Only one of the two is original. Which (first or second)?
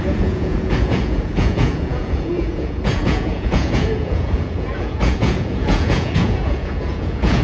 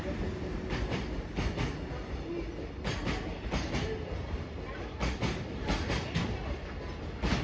second